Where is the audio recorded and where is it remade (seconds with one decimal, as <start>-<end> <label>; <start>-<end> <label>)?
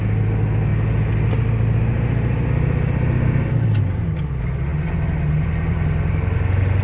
0.0-6.8 recorded